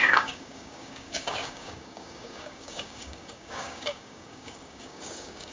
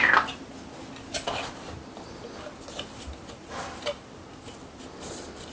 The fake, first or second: first